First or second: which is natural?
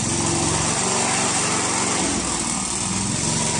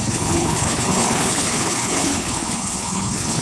first